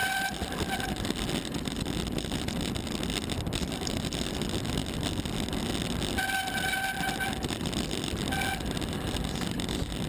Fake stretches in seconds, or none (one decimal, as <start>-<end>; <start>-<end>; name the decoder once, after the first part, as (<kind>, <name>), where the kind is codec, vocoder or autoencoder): none